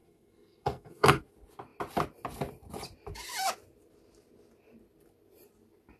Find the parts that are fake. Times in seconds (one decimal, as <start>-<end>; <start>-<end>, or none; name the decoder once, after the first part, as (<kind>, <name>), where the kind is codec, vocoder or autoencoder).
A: 0.0-1.2 (codec, SNAC)